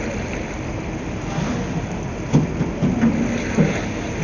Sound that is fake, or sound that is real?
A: real